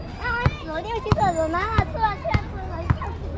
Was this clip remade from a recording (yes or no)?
no